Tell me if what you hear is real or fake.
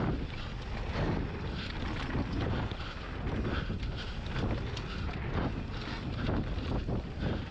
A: real